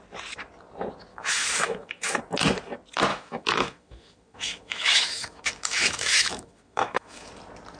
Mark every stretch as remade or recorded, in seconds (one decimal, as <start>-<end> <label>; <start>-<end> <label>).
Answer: 0.0-1.1 recorded; 1.1-2.2 remade; 2.2-3.1 recorded; 3.1-7.3 remade; 7.3-7.8 recorded

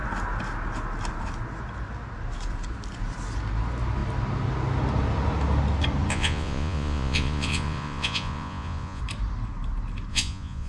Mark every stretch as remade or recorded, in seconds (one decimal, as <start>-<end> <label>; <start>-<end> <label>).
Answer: 0.0-6.1 recorded; 6.1-9.0 remade; 9.0-10.1 recorded; 10.1-10.7 remade

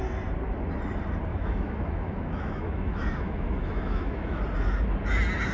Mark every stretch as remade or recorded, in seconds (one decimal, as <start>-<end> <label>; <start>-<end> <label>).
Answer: 0.0-1.3 recorded; 1.3-4.4 remade; 4.4-5.5 recorded

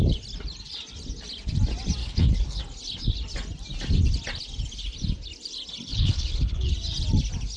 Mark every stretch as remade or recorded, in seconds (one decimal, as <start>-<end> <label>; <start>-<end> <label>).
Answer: 0.0-2.0 recorded; 2.0-2.6 remade; 2.6-5.9 recorded; 5.9-6.7 remade; 6.7-7.6 recorded

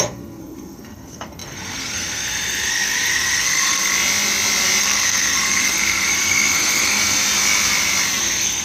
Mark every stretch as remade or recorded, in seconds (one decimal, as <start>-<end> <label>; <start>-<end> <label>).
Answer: 0.0-3.9 remade; 3.9-4.8 recorded; 4.8-7.0 remade; 7.0-8.2 recorded; 8.2-8.6 remade

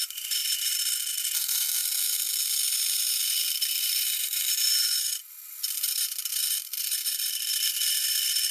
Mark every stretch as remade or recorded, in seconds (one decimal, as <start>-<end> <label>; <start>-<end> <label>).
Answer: 0.0-1.8 remade; 1.8-2.7 recorded; 2.7-5.2 remade; 5.2-5.7 recorded; 5.7-8.5 remade